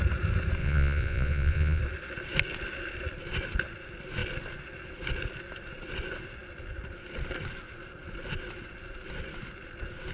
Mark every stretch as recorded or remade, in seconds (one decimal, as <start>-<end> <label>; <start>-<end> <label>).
0.0-0.6 recorded; 0.6-1.8 remade; 1.8-10.1 recorded